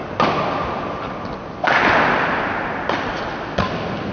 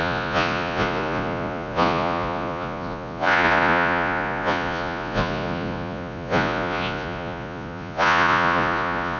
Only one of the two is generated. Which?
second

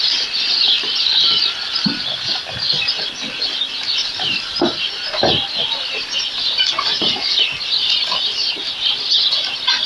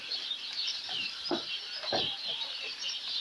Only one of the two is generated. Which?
second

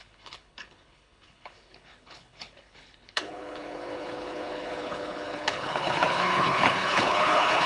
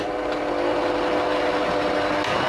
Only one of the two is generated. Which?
first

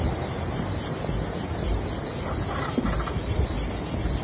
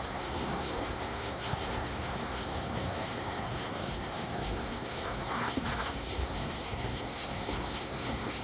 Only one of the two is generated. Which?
second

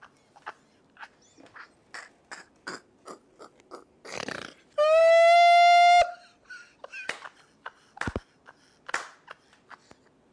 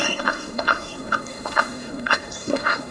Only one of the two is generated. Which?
second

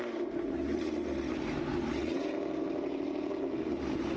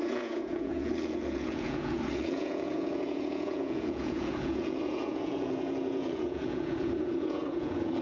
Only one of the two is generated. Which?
second